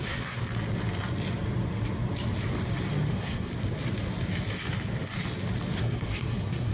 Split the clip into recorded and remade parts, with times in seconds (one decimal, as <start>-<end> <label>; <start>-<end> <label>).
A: 0.0-0.4 remade; 0.4-3.1 recorded; 3.1-3.5 remade; 3.5-5.8 recorded; 5.8-6.7 remade